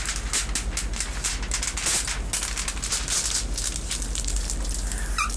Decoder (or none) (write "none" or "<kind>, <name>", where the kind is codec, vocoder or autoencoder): none